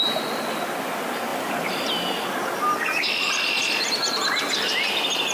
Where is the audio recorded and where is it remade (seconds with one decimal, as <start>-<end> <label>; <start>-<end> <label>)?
0.0-5.3 recorded